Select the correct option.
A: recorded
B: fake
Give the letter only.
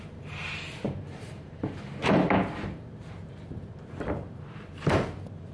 B